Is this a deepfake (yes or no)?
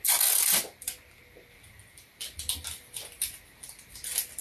yes